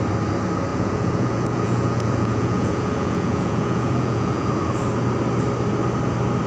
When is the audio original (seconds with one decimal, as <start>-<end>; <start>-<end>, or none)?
0.0-0.7; 4.5-6.5